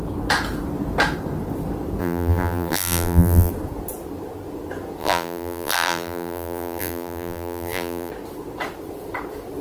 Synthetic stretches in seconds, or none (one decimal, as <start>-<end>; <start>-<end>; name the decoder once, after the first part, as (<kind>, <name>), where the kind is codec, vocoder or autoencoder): 2.0-3.5 (vocoder, BigVGAN v2); 5.0-8.1